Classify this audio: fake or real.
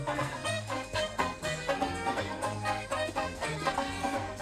fake